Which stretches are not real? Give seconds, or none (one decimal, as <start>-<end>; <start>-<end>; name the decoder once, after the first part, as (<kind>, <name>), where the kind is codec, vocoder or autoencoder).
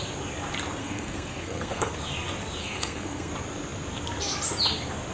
0.8-1.9 (codec, SNAC); 2.6-3.3